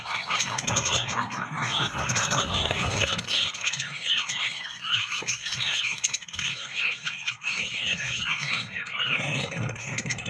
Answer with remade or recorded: remade